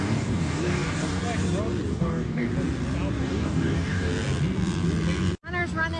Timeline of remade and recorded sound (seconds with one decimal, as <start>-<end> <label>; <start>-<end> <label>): 0.0-1.2 remade; 1.2-1.9 recorded; 1.9-2.5 remade; 2.5-3.2 recorded; 3.2-4.1 remade; 4.1-6.0 recorded